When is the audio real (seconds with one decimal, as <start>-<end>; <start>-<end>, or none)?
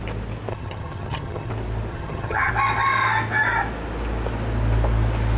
0.0-0.5; 1.5-1.9; 2.5-5.4